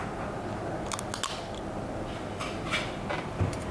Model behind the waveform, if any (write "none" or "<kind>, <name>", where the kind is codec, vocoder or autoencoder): none